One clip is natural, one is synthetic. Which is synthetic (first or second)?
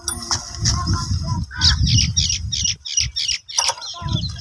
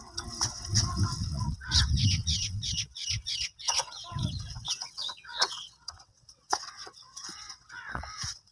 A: second